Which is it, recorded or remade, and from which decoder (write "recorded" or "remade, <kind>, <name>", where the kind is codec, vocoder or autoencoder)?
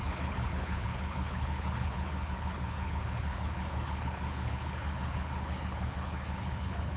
remade, codec, HILCodec